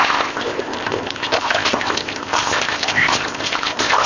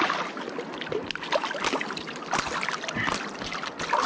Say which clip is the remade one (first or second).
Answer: first